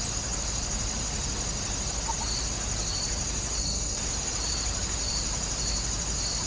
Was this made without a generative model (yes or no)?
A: yes